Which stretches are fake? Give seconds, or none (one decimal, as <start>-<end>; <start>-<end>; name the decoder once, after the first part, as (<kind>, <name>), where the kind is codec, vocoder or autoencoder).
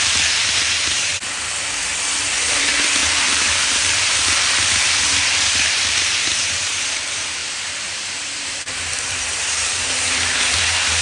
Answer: 0.0-1.1 (vocoder, BigVGAN v2); 2.6-11.0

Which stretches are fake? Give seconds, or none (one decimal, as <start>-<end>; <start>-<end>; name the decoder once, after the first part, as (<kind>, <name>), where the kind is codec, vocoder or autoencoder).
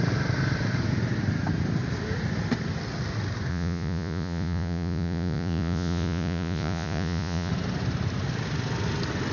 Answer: 3.5-7.5 (vocoder, Vocos)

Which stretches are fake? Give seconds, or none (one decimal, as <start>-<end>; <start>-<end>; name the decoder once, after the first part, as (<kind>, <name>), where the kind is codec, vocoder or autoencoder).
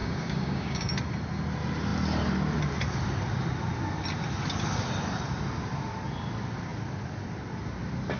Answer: 0.0-0.9 (codec, DAC)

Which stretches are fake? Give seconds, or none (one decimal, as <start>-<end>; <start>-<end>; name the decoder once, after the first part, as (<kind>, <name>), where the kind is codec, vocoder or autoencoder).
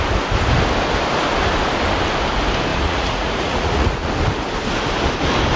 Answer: 2.7-4.1 (vocoder, Vocos)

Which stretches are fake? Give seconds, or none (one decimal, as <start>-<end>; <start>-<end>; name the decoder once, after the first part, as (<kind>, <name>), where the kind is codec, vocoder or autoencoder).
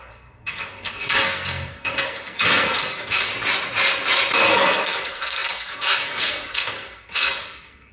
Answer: 0.0-3.3 (codec, SNAC); 4.5-7.9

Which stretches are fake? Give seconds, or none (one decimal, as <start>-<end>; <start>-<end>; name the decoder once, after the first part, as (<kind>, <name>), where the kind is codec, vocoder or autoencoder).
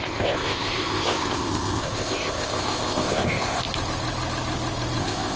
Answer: 0.0-3.6 (codec, ZipCodec); 5.0-5.4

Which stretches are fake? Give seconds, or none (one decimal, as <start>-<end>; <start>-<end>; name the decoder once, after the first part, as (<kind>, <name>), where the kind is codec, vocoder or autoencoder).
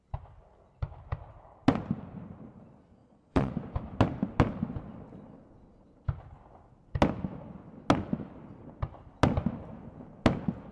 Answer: 3.0-3.5 (vocoder, Vocos)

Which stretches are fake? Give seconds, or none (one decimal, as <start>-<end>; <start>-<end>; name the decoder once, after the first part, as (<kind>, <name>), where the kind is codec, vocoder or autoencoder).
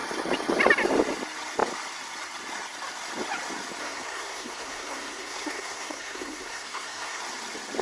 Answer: 3.8-7.2 (codec, SNAC)